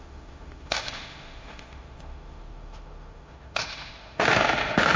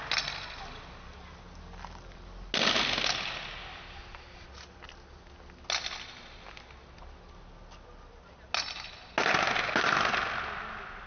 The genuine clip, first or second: second